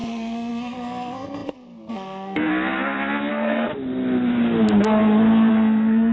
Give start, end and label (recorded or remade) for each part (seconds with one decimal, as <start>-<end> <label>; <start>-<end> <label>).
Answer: 0.0-2.5 remade; 2.5-3.3 recorded; 3.3-3.7 remade; 3.7-5.5 recorded; 5.5-6.1 remade